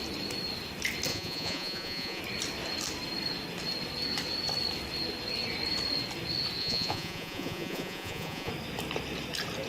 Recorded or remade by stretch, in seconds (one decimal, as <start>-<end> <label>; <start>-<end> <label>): 0.0-1.1 recorded; 1.1-2.2 remade; 2.2-6.6 recorded; 6.6-8.5 remade; 8.5-9.7 recorded